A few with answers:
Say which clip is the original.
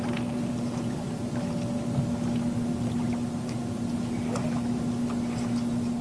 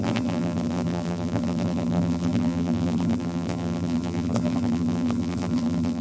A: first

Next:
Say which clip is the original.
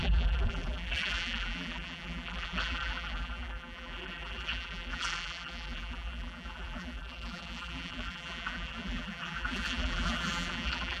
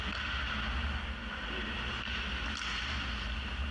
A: second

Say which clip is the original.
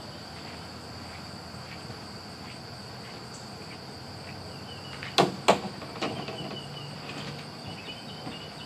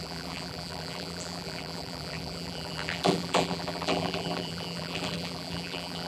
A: first